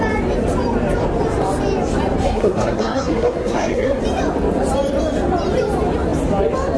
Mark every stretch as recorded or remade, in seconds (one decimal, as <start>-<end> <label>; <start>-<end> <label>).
0.0-2.2 recorded; 2.2-4.0 remade; 4.0-6.8 recorded